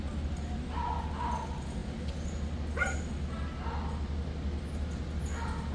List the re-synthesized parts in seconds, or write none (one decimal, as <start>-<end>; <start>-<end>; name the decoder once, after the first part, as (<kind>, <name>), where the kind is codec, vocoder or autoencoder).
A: none

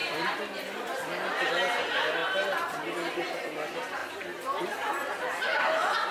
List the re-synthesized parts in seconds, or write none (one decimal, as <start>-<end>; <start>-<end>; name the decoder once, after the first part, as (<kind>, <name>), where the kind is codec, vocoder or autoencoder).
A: none

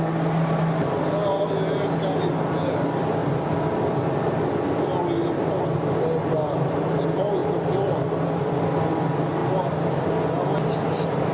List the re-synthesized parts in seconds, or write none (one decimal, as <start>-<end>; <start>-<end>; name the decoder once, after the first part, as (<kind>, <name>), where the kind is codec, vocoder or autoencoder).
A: 3.2-4.0 (vocoder, BigVGAN v2); 7.4-8.6; 9.4-10.1